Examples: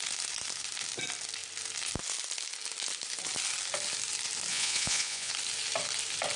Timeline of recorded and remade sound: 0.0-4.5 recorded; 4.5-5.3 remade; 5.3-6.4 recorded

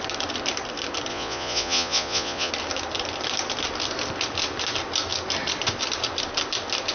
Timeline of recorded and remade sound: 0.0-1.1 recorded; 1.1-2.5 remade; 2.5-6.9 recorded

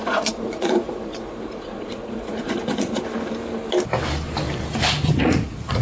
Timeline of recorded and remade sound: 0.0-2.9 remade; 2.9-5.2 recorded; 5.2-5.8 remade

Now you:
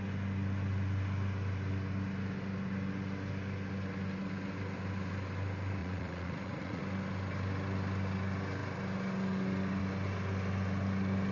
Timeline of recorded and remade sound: 0.0-5.8 recorded; 5.8-6.8 remade; 6.8-11.3 recorded